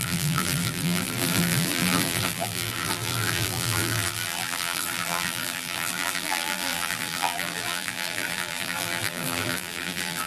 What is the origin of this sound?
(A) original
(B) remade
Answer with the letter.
B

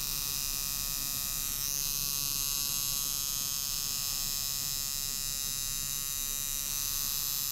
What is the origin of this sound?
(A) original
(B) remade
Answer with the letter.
A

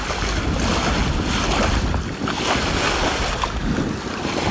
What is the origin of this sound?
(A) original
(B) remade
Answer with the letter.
A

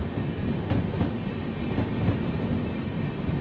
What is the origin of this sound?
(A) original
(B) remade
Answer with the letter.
B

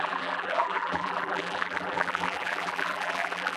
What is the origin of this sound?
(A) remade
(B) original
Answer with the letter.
A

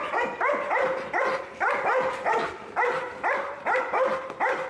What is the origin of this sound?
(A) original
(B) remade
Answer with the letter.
A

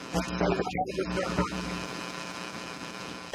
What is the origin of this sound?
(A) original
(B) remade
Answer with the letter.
B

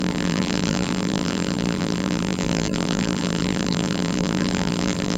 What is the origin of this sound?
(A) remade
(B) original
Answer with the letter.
A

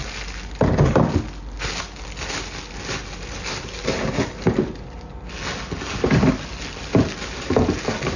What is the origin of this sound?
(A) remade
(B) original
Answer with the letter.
B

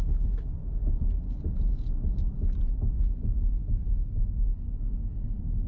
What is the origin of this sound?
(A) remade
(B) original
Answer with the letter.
B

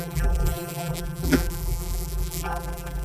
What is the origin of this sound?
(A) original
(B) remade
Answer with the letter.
B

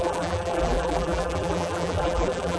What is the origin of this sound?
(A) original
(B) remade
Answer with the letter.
B